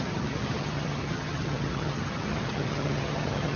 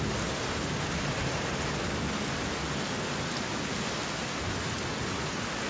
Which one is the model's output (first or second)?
first